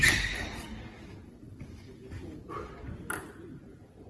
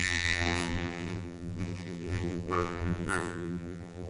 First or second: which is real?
first